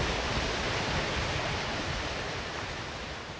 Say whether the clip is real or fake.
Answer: real